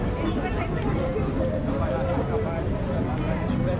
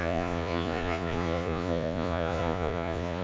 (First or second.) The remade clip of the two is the second